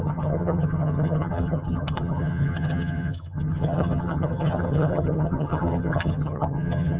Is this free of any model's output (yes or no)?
no